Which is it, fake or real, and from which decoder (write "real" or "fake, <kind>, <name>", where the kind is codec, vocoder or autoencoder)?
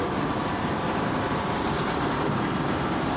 fake, vocoder, BigVGAN v2